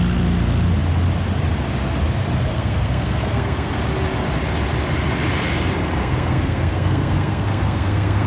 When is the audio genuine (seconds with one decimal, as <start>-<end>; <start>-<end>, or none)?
0.0-2.5; 3.7-6.0